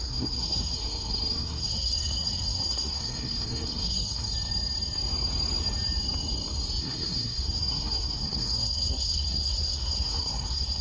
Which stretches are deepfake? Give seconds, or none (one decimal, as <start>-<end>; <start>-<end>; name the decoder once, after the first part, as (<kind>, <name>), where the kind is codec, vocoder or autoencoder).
0.0-4.3 (codec, SNAC); 6.8-10.8